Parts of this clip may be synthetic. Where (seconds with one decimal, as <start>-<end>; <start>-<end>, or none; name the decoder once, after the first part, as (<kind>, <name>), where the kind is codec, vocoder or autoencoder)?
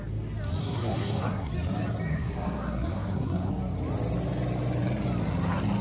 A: 0.6-1.5 (codec, SNAC); 2.1-3.5